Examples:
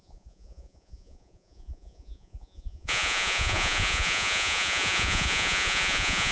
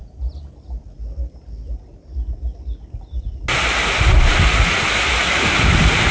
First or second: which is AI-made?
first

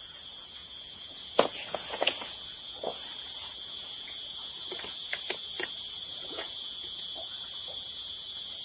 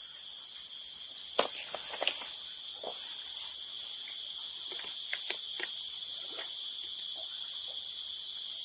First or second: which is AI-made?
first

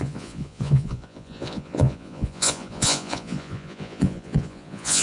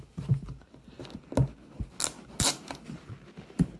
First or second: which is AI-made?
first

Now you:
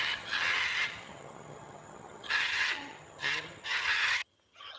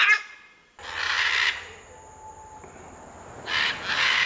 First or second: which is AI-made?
first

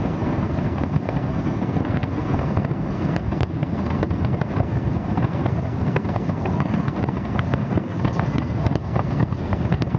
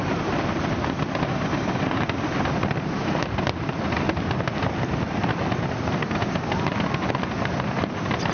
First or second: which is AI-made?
first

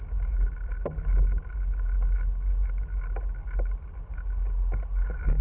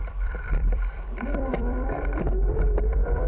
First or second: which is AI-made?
second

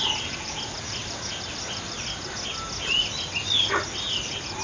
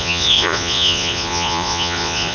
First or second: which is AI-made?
second